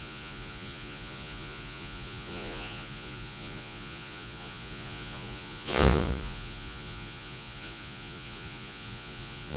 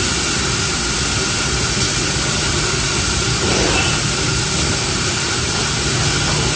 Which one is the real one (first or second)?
second